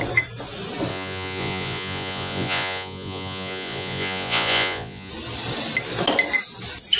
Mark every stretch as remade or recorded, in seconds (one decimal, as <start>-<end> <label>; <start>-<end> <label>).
0.0-0.9 recorded; 0.9-5.1 remade; 5.1-7.0 recorded